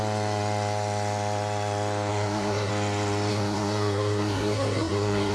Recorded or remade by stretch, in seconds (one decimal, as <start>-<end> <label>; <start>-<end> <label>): 0.0-2.1 recorded; 2.1-2.7 remade; 2.7-3.3 recorded; 3.3-5.3 remade